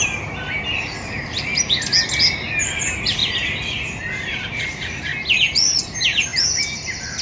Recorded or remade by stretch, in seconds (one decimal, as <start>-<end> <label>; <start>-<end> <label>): 0.0-1.5 remade; 1.5-2.6 recorded; 2.6-5.1 remade; 5.1-5.7 recorded; 5.7-7.2 remade